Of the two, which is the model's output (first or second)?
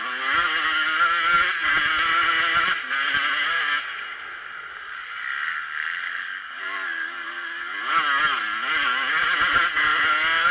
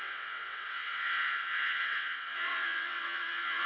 second